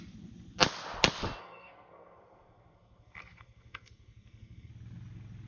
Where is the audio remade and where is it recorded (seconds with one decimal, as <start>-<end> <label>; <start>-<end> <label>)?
0.0-1.4 recorded; 1.4-4.7 remade; 4.7-5.5 recorded